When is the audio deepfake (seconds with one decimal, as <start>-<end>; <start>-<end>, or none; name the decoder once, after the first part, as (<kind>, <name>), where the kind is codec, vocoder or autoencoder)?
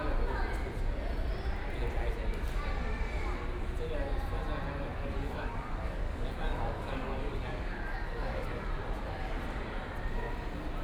4.9-8.7 (codec, DAC)